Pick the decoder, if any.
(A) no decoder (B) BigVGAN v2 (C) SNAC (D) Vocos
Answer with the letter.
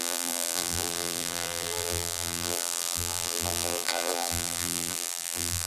B